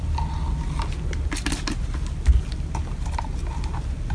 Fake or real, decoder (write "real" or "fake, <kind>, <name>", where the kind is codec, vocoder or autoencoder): real